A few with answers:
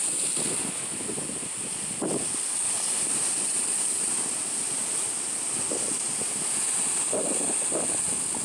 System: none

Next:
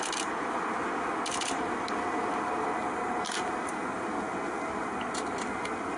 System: none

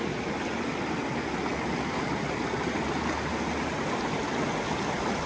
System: none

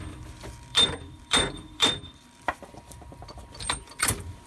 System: vocoder, BigVGAN v2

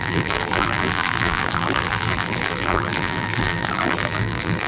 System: vocoder, BigVGAN v2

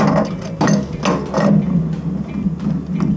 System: none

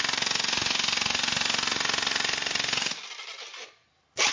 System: none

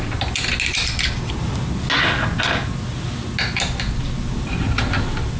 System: none